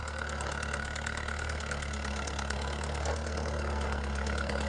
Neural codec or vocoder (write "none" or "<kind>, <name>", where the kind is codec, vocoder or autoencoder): codec, SNAC